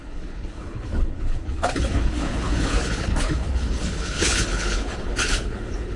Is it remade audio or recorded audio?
remade